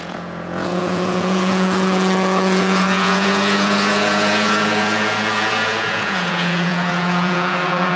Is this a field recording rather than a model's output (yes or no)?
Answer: no